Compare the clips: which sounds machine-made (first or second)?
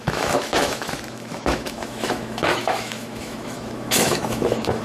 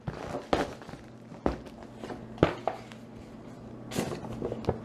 first